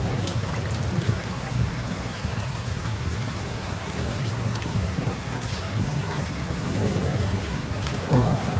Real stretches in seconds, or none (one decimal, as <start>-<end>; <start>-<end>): 0.5-1.0